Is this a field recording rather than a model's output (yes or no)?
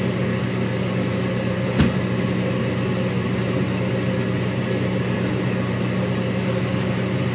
yes